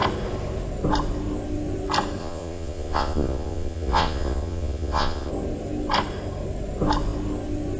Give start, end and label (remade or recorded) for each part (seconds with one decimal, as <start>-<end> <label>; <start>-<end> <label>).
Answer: 0.0-2.2 recorded; 2.2-5.3 remade; 5.3-7.8 recorded